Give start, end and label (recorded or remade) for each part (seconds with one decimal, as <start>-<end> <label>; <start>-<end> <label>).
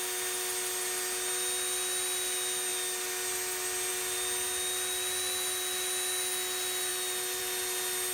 0.0-8.1 recorded